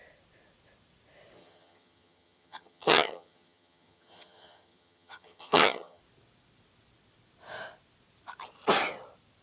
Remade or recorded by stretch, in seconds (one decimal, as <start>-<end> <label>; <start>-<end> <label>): 0.0-1.4 recorded; 1.4-6.0 remade; 6.0-9.4 recorded